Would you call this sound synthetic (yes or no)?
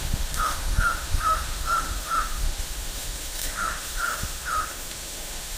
yes